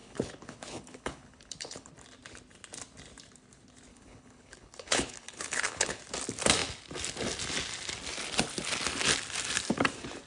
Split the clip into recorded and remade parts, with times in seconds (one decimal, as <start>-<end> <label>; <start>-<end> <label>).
0.0-1.9 remade; 1.9-3.9 recorded; 3.9-6.0 remade; 6.0-10.3 recorded